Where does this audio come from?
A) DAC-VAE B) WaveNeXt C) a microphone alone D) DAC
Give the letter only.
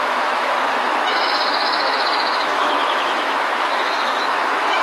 A